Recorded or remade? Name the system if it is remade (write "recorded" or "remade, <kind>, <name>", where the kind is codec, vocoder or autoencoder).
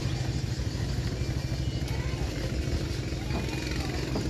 recorded